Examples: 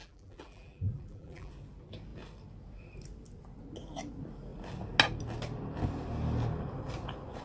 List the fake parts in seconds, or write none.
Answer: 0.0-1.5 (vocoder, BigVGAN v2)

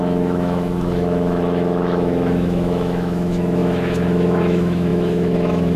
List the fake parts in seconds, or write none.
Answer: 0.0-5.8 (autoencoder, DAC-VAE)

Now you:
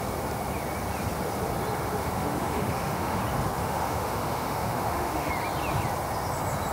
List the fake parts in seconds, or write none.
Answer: 2.0-3.2 (autoencoder, DAC-VAE); 3.6-5.3

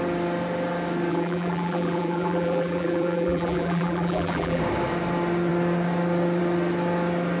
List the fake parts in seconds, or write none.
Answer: 1.1-4.6 (vocoder, BigVGAN v2)

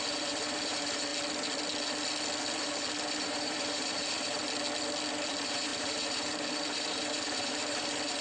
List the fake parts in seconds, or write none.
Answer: 0.0-1.1 (vocoder, BigVGAN v2); 2.5-4.4; 5.3-8.2

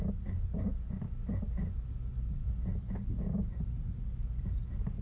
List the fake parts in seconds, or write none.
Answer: none